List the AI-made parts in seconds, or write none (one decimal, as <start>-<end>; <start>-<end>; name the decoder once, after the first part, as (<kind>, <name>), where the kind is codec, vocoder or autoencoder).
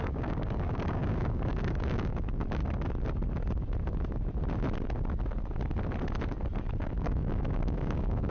0.0-2.6 (codec, DAC); 6.9-8.3